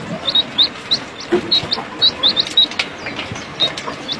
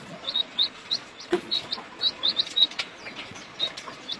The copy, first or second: second